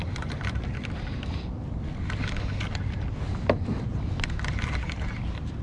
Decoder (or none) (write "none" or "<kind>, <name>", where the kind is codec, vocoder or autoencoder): none